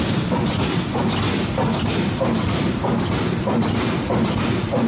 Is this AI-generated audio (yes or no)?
yes